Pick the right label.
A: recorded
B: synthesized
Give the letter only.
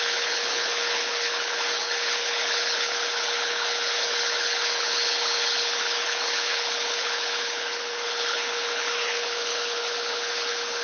B